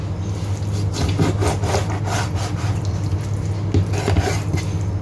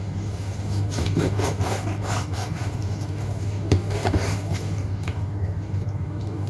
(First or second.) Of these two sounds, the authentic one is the first